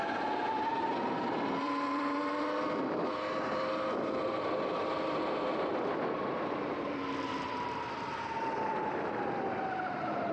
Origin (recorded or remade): remade